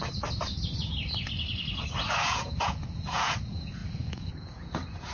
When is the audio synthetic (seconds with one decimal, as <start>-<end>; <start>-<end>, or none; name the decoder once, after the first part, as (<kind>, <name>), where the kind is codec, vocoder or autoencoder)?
2.1-5.1 (vocoder, Vocos)

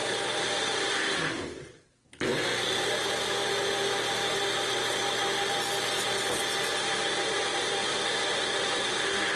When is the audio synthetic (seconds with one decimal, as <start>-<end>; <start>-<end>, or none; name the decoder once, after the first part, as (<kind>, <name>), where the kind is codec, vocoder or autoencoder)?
0.0-2.9 (vocoder, BigVGAN v2); 7.5-8.9

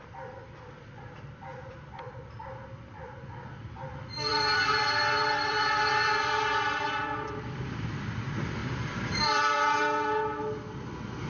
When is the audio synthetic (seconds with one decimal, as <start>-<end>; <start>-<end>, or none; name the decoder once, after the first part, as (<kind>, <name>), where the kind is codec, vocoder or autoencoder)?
4.3-7.4 (vocoder, BigVGAN v2); 8.6-9.8

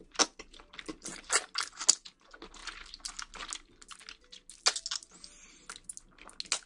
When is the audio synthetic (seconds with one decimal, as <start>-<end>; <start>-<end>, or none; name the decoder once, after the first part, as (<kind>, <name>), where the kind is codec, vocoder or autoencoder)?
none

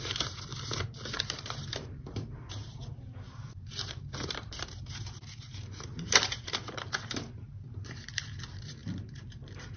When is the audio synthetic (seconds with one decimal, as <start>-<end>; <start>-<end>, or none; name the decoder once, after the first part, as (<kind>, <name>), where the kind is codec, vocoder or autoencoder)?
0.0-0.5 (vocoder, BigVGAN v2); 1.1-2.8; 3.5-9.8

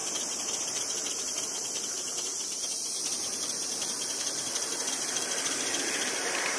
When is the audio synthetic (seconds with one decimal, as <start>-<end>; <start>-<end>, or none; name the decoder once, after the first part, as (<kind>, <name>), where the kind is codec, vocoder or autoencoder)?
0.0-6.6 (vocoder, BigVGAN v2)

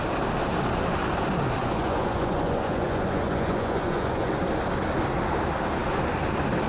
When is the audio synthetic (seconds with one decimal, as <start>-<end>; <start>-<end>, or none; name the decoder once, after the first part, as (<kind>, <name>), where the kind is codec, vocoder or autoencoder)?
1.6-4.3 (vocoder, Vocos)

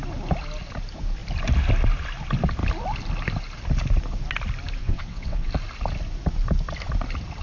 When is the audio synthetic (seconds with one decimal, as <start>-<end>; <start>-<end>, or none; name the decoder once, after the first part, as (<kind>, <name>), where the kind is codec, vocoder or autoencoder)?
4.8-5.5 (vocoder, WaveNeXt)